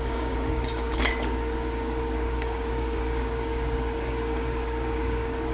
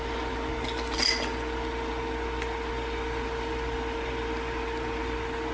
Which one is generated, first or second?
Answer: first